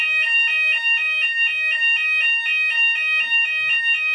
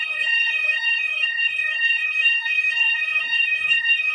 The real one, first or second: first